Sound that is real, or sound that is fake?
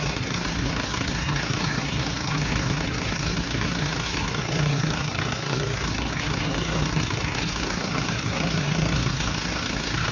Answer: fake